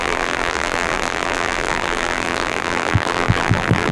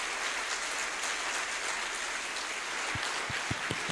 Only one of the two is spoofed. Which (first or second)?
first